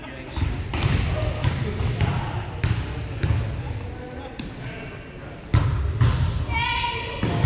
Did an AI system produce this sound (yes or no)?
no